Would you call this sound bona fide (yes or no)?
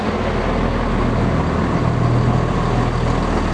yes